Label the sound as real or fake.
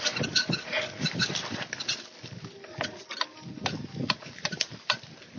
real